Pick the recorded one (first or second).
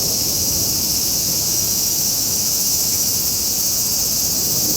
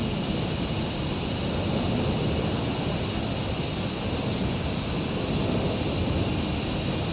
second